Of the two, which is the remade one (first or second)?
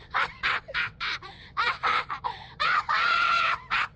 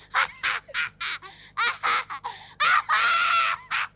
first